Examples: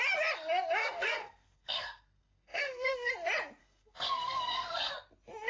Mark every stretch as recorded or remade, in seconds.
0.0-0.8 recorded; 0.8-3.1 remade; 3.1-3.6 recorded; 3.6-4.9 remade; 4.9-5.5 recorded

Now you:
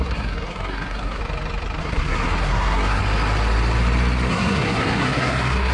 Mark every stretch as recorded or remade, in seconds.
0.0-1.2 remade; 1.2-1.8 recorded; 1.8-3.0 remade; 3.0-4.3 recorded; 4.3-5.7 remade

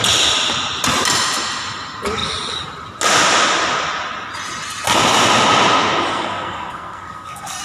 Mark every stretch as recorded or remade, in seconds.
0.0-6.1 recorded; 6.1-7.6 remade

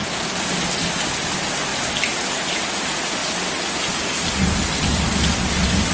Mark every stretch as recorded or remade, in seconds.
0.0-5.9 recorded

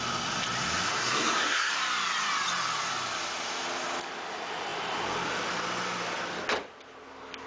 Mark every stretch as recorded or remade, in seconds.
0.0-0.9 recorded; 0.9-1.7 remade; 1.7-7.5 recorded

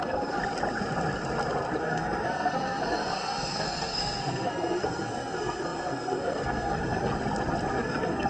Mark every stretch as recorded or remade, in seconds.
0.0-0.4 remade; 0.4-1.8 recorded; 1.8-7.1 remade; 7.1-7.7 recorded; 7.7-8.3 remade

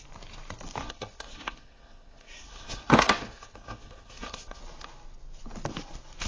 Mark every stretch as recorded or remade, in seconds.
0.0-0.8 recorded; 0.8-4.6 remade; 4.6-6.3 recorded

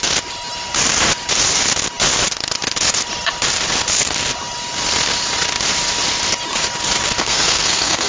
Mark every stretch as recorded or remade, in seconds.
0.0-7.2 recorded; 7.2-8.1 remade